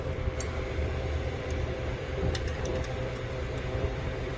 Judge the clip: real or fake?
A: fake